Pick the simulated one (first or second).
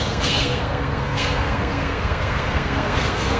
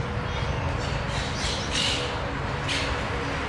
first